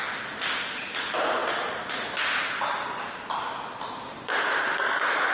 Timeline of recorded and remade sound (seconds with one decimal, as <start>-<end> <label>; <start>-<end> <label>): 0.0-5.3 recorded